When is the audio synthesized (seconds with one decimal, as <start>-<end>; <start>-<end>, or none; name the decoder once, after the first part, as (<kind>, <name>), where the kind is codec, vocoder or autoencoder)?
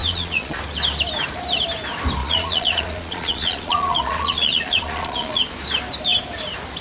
0.0-0.6 (vocoder, Vocos); 2.2-5.4